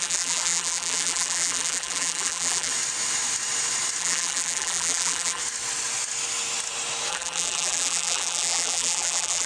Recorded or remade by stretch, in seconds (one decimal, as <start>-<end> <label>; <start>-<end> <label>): 0.0-2.7 remade; 2.7-4.0 recorded; 4.0-5.4 remade; 5.4-7.1 recorded; 7.1-9.5 remade